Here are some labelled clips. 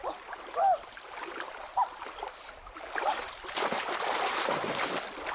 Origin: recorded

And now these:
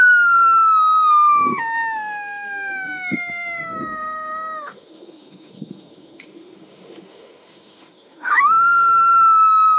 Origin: remade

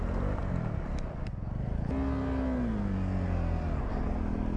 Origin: recorded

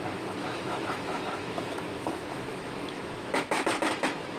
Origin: remade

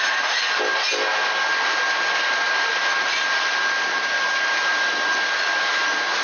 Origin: recorded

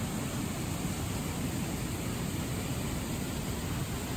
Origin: recorded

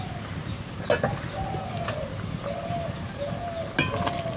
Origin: recorded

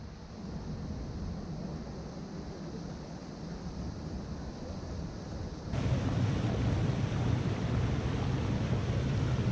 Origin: recorded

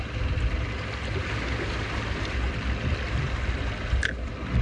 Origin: recorded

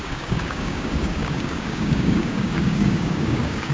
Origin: remade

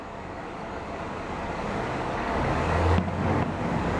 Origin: remade